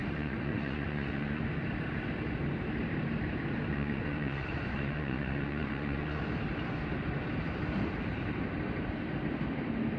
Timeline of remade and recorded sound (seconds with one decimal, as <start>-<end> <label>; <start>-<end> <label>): 0.0-1.4 remade; 1.4-3.7 recorded; 3.7-6.2 remade; 6.2-10.0 recorded